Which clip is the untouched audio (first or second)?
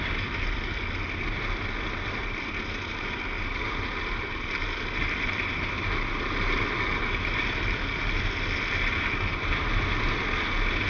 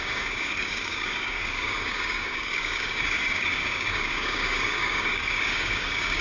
first